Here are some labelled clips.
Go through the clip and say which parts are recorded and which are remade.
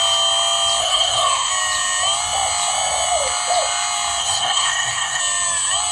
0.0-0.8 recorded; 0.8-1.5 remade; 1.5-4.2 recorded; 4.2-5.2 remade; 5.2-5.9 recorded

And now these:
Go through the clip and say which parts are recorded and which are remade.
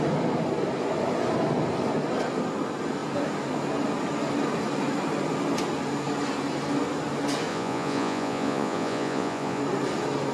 0.0-7.5 recorded; 7.5-9.6 remade; 9.6-10.3 recorded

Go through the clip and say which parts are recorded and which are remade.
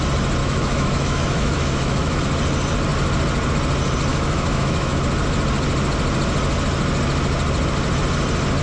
0.0-0.4 recorded; 0.4-2.2 remade; 2.2-4.1 recorded; 4.1-5.0 remade; 5.0-8.6 recorded